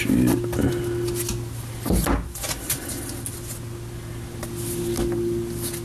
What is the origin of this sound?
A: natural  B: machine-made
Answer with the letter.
A